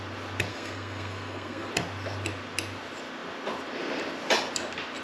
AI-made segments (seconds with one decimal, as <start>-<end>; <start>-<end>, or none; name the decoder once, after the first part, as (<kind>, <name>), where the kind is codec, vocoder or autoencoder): 0.5-1.7 (codec, SNAC)